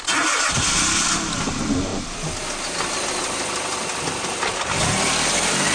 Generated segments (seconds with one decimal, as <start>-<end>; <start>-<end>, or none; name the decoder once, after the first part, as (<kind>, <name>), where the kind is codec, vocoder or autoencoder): none